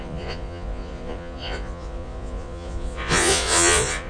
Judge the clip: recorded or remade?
remade